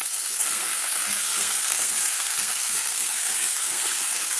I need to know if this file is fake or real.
fake